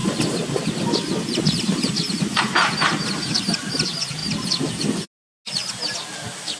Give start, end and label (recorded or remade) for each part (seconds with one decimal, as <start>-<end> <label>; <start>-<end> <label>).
0.0-6.6 recorded

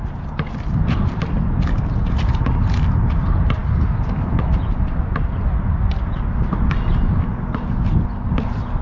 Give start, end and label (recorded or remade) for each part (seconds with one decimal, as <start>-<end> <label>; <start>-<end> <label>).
0.0-8.8 recorded

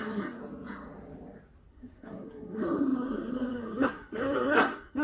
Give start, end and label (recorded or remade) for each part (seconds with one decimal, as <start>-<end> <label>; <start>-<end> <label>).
0.0-0.4 remade; 0.4-1.7 recorded; 1.7-5.0 remade

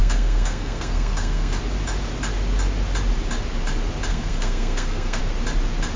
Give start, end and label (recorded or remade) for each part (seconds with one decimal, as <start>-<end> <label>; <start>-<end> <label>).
0.0-1.6 remade; 1.6-4.1 recorded; 4.1-5.2 remade; 5.2-6.0 recorded

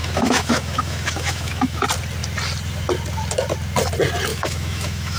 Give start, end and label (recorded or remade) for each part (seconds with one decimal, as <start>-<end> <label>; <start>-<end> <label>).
0.0-1.8 remade; 1.8-4.3 recorded; 4.3-5.2 remade